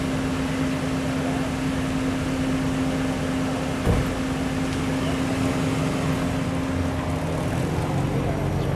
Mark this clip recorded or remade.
recorded